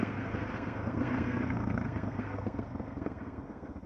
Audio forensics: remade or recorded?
remade